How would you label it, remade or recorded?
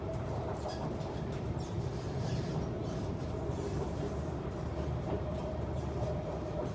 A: remade